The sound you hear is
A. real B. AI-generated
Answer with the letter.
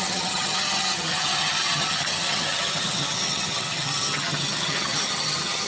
B